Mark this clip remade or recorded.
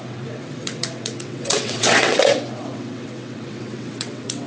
remade